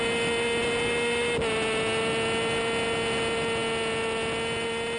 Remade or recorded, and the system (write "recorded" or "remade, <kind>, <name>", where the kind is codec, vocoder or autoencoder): recorded